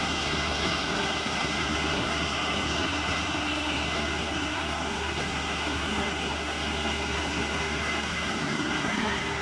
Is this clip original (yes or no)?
no